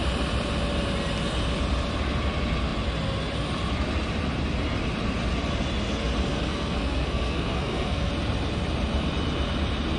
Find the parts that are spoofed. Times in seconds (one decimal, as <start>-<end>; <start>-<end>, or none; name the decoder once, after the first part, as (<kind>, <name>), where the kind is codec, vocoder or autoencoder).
6.3-8.1 (codec, SNAC)